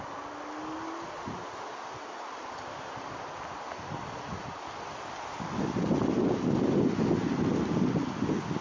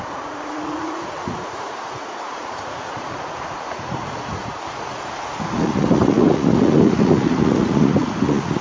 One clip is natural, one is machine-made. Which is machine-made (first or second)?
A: second